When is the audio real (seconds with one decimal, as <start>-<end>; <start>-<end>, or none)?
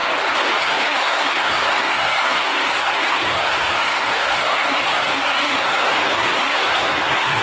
0.0-0.6